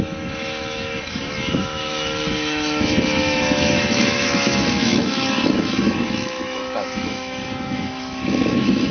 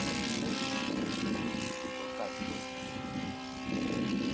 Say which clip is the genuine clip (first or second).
second